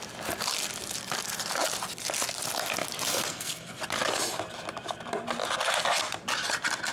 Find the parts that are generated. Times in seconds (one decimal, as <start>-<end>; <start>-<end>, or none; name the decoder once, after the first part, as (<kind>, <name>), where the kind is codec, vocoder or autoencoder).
3.1-3.8 (codec, SNAC)